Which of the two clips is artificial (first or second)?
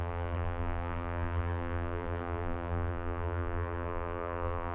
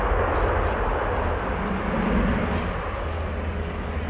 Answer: first